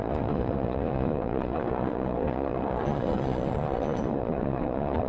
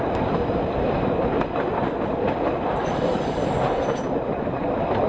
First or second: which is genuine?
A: second